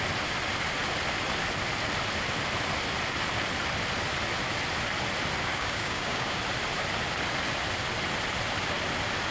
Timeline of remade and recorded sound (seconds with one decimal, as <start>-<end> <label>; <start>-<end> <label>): 0.0-5.5 recorded; 5.5-6.4 remade; 6.4-9.3 recorded